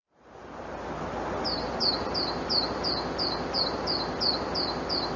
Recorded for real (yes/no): yes